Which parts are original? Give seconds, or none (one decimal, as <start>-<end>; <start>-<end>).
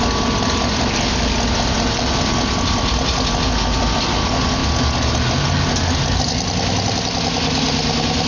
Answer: 0.0-8.3